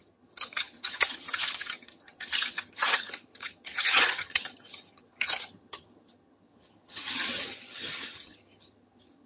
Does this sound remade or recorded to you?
remade